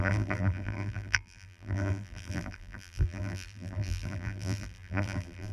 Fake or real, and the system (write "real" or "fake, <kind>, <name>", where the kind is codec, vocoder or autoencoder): fake, vocoder, BigVGAN v2